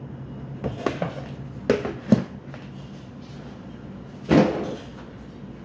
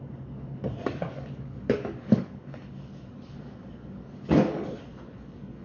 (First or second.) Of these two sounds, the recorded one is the first